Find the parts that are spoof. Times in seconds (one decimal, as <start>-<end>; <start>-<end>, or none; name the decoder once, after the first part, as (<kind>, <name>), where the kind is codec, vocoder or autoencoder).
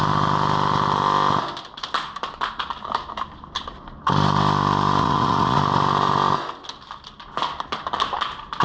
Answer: 5.0-5.6 (vocoder, Vocos)